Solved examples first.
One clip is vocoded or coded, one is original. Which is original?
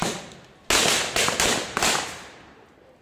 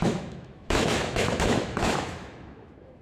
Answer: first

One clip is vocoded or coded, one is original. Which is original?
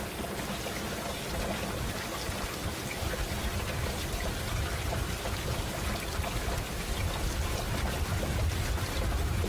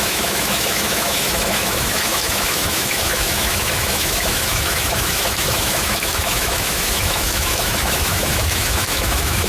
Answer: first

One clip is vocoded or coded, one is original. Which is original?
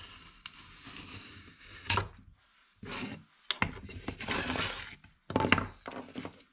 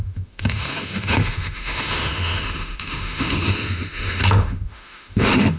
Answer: first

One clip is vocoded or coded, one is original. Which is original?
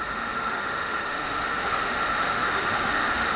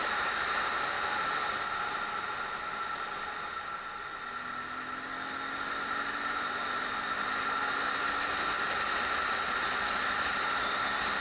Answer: second